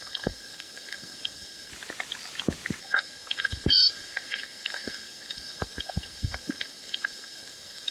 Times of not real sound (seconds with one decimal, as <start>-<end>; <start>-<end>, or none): 0.0-1.7; 2.8-7.9